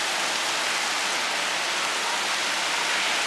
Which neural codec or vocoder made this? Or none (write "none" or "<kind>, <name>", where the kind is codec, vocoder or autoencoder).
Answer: none